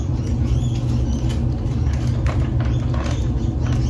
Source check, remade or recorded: recorded